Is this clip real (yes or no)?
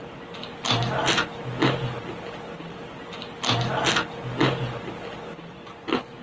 yes